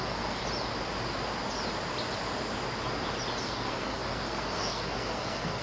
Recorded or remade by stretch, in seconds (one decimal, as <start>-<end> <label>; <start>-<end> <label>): 0.0-0.4 remade; 0.4-3.4 recorded; 3.4-5.6 remade